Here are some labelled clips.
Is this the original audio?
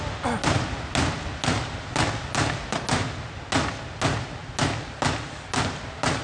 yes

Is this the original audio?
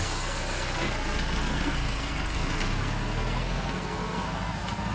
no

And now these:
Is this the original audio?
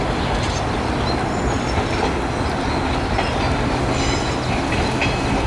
yes